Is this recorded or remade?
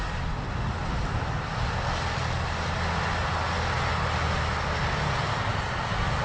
recorded